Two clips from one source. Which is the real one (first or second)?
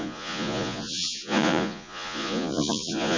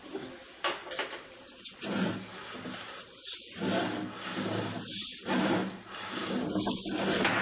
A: second